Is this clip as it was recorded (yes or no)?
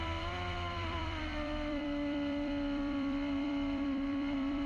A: no